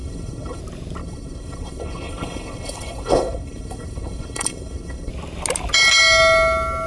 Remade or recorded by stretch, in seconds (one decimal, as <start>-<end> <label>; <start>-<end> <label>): 0.0-0.6 remade; 0.6-1.0 recorded; 1.0-5.1 remade; 5.1-6.9 recorded